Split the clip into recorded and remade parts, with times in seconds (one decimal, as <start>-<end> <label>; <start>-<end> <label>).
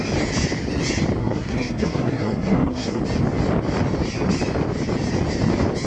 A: 0.0-1.2 recorded; 1.2-3.0 remade; 3.0-5.9 recorded